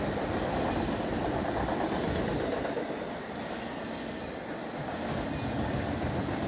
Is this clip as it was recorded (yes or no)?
yes